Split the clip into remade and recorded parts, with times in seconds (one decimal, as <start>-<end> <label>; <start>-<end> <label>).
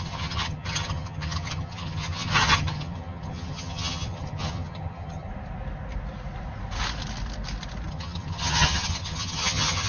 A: 0.0-5.3 remade; 5.3-7.9 recorded; 7.9-9.9 remade